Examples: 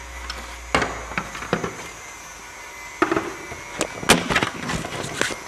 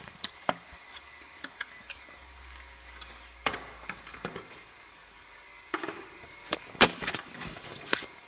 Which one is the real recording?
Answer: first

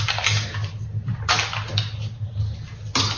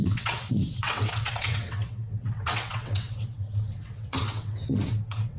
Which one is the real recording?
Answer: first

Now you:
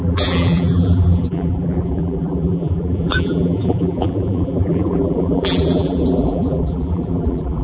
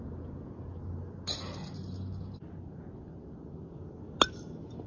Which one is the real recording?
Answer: second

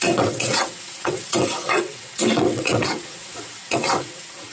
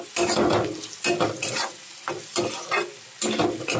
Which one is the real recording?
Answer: second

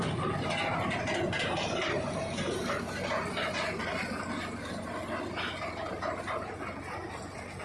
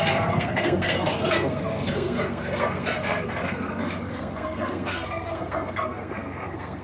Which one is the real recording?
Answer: first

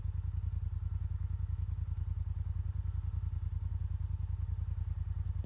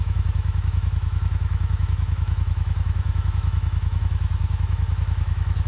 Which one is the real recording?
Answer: first